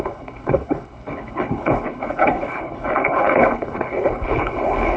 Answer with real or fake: fake